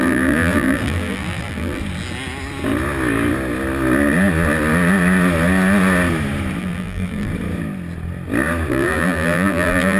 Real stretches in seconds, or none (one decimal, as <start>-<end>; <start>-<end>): 1.8-6.6; 7.3-8.7